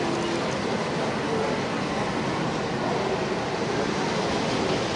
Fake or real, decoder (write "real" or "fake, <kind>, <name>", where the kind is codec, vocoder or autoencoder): real